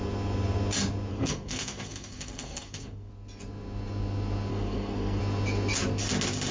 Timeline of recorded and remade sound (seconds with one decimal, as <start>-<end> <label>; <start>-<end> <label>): 0.0-1.1 recorded; 1.1-3.1 remade; 3.1-4.5 recorded; 4.5-5.2 remade; 5.2-6.5 recorded